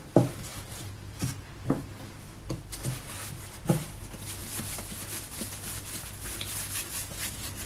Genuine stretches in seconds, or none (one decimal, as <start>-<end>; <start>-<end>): 0.0-7.7